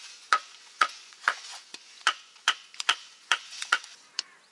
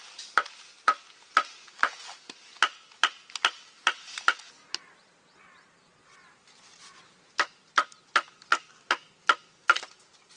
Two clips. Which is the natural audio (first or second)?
second